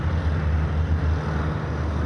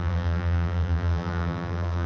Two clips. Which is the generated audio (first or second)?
second